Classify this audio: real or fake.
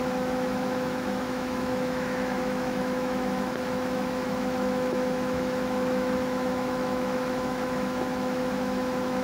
fake